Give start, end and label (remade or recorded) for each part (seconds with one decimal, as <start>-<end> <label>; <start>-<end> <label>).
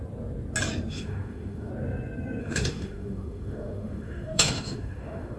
0.0-0.9 recorded; 0.9-1.7 remade; 1.7-2.4 recorded; 2.4-5.4 remade